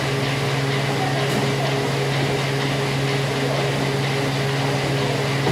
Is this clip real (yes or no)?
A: yes